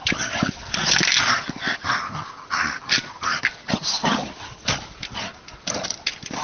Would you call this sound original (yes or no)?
yes